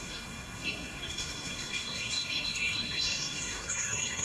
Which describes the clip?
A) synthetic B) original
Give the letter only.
A